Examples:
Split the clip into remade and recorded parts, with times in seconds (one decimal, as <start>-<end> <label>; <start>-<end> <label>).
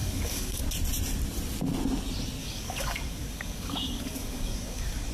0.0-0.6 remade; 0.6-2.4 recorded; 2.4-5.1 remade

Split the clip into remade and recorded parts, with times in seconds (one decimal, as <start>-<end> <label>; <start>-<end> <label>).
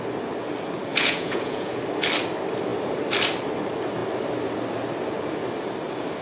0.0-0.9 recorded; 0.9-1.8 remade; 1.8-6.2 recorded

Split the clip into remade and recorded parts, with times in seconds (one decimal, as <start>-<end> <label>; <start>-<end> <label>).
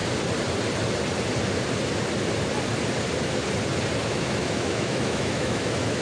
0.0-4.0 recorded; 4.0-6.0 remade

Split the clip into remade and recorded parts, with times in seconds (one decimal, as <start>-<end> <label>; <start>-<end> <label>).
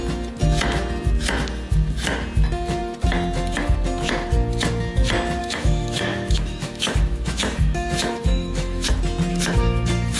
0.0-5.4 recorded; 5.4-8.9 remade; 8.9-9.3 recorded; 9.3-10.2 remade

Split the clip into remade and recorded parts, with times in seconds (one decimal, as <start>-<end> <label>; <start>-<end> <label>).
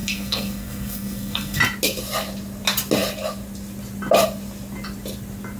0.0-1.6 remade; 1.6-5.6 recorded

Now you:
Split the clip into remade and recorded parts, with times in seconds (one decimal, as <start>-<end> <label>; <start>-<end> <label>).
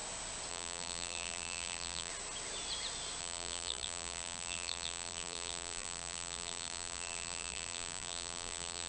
0.0-0.5 recorded; 0.5-2.1 remade; 2.1-3.2 recorded; 3.2-8.9 remade